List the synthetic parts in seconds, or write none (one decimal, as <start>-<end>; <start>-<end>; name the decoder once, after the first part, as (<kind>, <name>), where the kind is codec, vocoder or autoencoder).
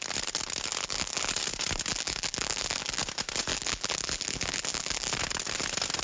0.7-1.3 (vocoder, BigVGAN v2); 1.9-3.0; 3.5-5.1